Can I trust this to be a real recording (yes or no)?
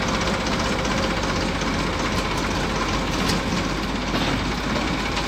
yes